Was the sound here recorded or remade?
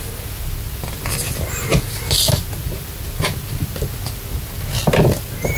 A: recorded